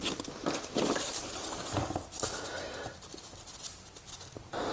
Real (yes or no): yes